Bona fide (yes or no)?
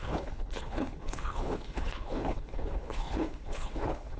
no